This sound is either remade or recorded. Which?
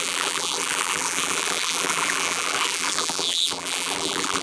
remade